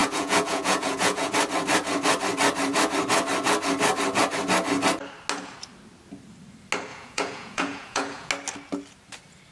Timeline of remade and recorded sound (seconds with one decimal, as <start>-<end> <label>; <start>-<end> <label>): 0.0-1.3 remade; 1.3-6.9 recorded; 6.9-8.3 remade; 8.3-9.5 recorded